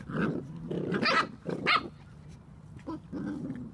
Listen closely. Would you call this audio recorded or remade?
recorded